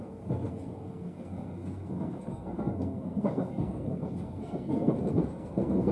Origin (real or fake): fake